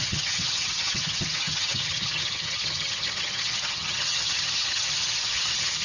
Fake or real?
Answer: fake